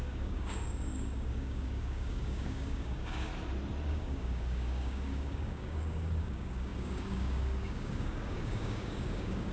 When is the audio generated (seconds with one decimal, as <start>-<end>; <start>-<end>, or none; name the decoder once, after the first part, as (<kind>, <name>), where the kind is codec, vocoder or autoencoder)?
0.0-3.3 (codec, DAC); 3.9-9.5